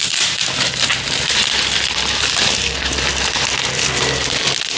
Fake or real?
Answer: real